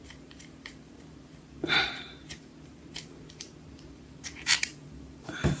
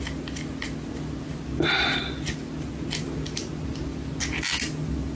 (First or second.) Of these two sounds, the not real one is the first